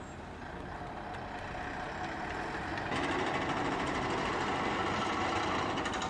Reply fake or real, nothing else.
real